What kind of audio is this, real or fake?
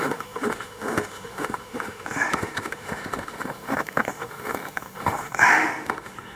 fake